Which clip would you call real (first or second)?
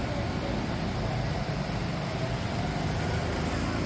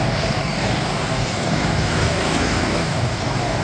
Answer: first